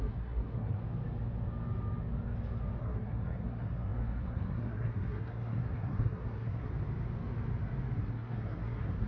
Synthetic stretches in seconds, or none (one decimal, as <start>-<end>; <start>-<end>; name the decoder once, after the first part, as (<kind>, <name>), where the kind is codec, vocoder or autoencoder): 0.0-0.8 (codec, SNAC); 2.8-6.7; 8.0-9.1